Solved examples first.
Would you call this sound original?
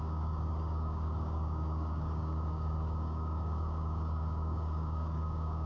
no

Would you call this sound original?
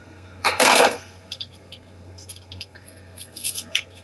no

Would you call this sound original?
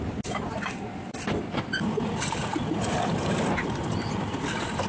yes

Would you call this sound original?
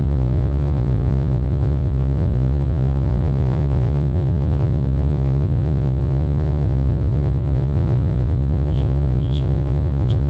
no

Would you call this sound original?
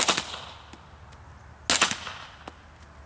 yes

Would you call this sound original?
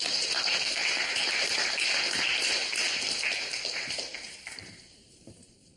no